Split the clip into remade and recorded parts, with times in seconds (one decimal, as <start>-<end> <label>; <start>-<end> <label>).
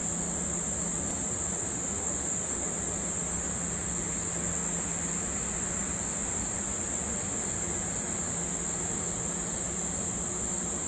0.0-1.6 recorded; 1.6-2.7 remade; 2.7-3.3 recorded; 3.3-4.1 remade; 4.1-10.9 recorded